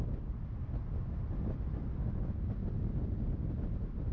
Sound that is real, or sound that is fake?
real